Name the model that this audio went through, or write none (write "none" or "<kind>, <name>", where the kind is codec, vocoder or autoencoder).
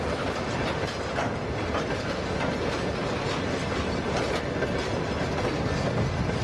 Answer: none